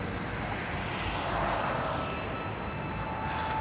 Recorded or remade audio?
recorded